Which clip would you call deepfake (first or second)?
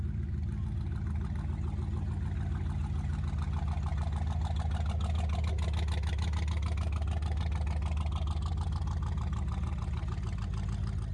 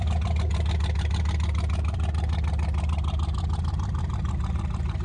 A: second